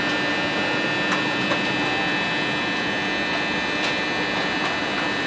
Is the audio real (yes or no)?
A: yes